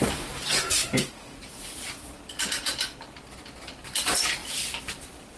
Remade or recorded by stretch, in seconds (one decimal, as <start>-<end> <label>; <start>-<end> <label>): 0.0-2.6 remade; 2.6-3.2 recorded; 3.2-5.4 remade